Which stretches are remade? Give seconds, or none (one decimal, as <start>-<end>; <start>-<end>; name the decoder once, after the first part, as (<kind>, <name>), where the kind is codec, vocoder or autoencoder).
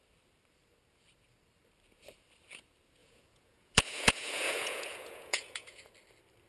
3.0-5.9 (vocoder, Vocos)